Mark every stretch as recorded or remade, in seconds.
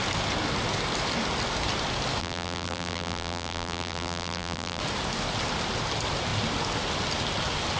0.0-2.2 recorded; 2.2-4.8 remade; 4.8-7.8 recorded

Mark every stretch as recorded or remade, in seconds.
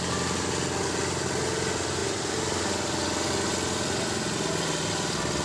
0.0-5.4 recorded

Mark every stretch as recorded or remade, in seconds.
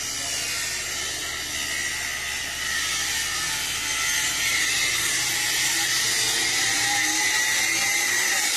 0.0-4.1 recorded; 4.1-8.6 remade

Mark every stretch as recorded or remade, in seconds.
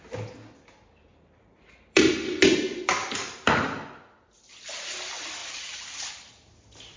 0.0-1.1 recorded; 1.1-2.4 remade; 2.4-3.0 recorded; 3.0-4.0 remade; 4.0-5.4 recorded; 5.4-6.1 remade; 6.1-7.0 recorded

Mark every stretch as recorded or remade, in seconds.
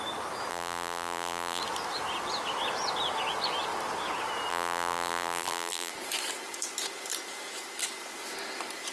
0.0-0.5 recorded; 0.5-1.6 remade; 1.6-4.5 recorded; 4.5-5.9 remade; 5.9-8.9 recorded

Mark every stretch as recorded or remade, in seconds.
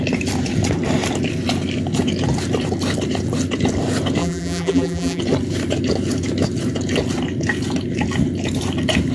0.0-4.2 recorded; 4.2-5.2 remade; 5.2-9.1 recorded